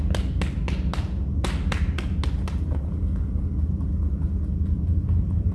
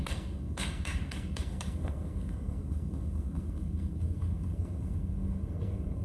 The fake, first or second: second